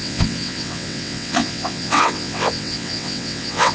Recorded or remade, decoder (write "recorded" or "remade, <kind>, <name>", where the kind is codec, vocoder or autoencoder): remade, vocoder, WaveNeXt